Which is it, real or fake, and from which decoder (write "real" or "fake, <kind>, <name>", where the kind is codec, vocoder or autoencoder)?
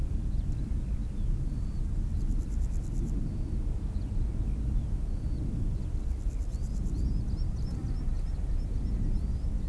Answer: real